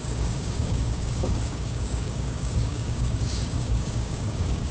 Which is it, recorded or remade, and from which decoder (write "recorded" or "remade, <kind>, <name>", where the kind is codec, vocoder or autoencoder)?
remade, codec, DAC